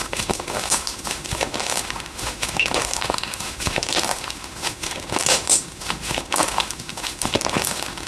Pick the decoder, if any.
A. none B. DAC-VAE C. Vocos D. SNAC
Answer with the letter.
B